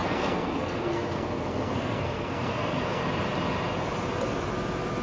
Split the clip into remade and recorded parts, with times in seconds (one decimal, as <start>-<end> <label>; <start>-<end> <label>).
0.0-3.0 remade; 3.0-5.0 recorded